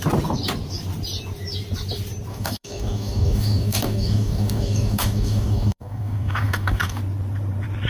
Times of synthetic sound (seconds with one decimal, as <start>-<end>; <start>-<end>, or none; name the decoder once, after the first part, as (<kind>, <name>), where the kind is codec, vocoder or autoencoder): 2.3-7.0 (codec, DAC)